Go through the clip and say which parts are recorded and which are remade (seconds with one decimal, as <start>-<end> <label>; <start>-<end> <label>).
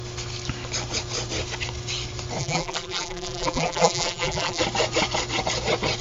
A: 0.0-2.4 recorded; 2.4-4.6 remade; 4.6-6.0 recorded